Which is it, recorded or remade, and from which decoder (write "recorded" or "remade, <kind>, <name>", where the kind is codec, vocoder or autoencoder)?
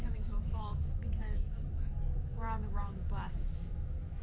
remade, autoencoder, DAC-VAE